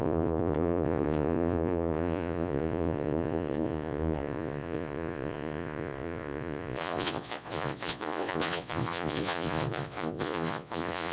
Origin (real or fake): fake